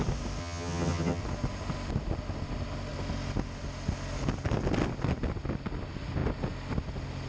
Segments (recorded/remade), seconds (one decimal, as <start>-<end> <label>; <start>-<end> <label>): 0.0-0.4 recorded; 0.4-1.2 remade; 1.2-7.3 recorded